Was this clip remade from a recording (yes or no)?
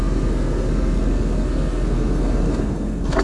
yes